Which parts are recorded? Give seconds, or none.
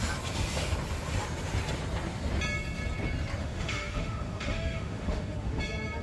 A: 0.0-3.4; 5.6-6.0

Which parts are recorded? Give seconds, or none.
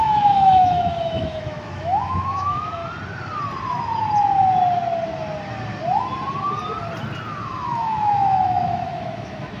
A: 2.8-7.4